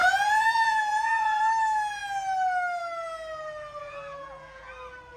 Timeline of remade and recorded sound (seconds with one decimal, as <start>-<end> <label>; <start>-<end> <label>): 0.0-1.4 remade; 1.4-3.8 recorded; 3.8-4.7 remade; 4.7-5.2 recorded